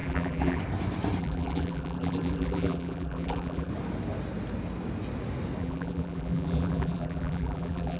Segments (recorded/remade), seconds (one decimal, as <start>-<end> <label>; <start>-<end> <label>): 0.0-0.6 remade; 0.6-1.2 recorded; 1.2-3.7 remade; 3.7-5.6 recorded; 5.6-8.0 remade